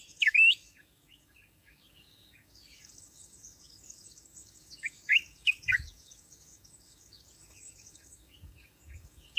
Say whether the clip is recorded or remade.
remade